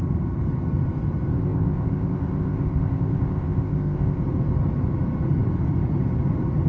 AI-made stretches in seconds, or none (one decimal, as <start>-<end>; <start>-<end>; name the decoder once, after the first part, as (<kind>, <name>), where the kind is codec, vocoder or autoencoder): 1.3-4.2 (codec, ZipCodec)